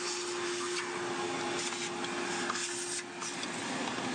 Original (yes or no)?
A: yes